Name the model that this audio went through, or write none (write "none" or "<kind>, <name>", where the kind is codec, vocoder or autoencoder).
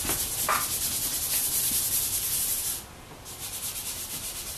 none